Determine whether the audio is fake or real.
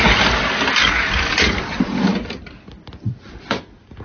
real